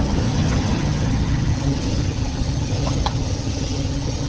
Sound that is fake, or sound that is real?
fake